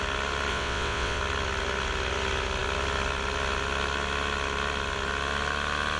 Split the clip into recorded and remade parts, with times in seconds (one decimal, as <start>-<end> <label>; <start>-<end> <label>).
0.0-0.5 recorded; 0.5-1.2 remade; 1.2-6.0 recorded